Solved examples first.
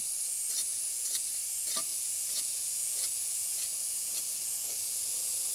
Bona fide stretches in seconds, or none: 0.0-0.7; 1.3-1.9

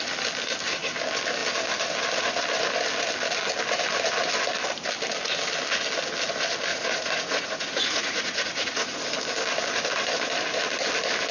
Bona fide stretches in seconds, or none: 0.0-6.7; 9.0-11.3